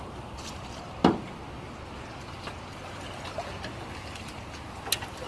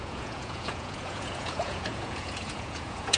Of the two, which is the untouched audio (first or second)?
first